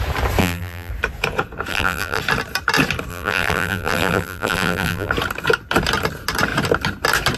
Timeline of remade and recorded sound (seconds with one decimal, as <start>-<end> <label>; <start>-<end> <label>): 0.0-0.4 recorded; 0.4-0.9 remade; 0.9-1.7 recorded; 1.7-2.2 remade; 2.2-3.1 recorded; 3.1-5.1 remade; 5.1-7.4 recorded